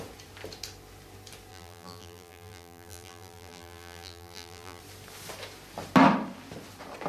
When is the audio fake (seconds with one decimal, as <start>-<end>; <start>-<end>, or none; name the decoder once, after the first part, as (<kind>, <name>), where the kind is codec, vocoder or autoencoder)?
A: 1.5-4.8 (vocoder, BigVGAN v2)